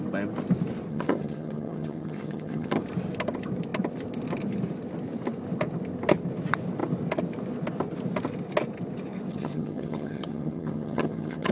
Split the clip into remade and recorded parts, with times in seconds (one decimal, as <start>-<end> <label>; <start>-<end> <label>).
0.0-0.9 recorded; 0.9-2.8 remade; 2.8-9.3 recorded; 9.3-11.5 remade

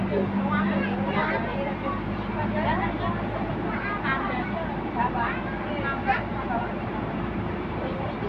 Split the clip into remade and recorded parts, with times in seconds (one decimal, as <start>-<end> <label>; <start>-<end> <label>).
0.0-4.1 recorded; 4.1-4.7 remade; 4.7-6.3 recorded; 6.3-8.3 remade

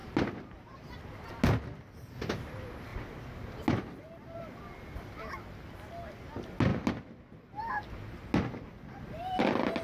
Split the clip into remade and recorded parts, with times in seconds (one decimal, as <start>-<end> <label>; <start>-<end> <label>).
0.0-9.8 recorded